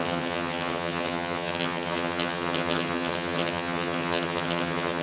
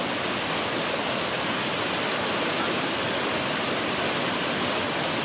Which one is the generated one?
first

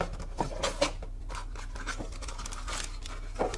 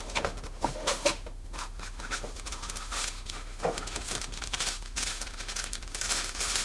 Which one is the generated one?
second